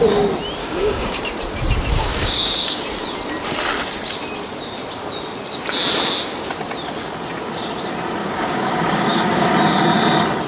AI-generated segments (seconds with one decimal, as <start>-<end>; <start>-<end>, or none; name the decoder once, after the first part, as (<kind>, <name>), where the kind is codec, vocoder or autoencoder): 0.6-1.2 (codec, DAC); 2.0-2.8; 8.2-9.5

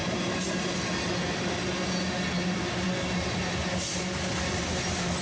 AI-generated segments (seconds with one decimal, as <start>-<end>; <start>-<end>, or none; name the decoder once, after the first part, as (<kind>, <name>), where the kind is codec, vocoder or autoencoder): none

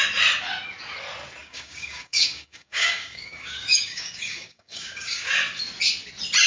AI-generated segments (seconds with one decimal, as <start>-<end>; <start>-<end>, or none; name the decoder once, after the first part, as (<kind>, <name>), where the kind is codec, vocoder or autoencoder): 1.4-5.3 (codec, DAC)

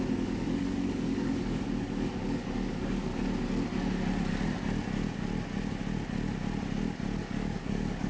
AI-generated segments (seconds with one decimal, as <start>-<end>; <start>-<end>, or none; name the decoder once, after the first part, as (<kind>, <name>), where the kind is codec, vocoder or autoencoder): 0.0-3.1 (codec, DAC); 7.2-8.1